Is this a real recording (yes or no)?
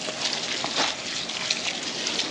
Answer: yes